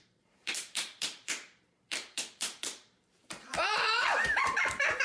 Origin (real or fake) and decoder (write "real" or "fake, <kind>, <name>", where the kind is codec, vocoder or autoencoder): fake, vocoder, BigVGAN v2